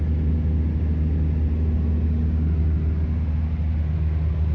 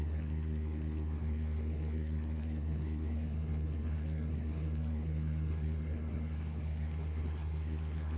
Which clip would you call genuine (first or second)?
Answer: first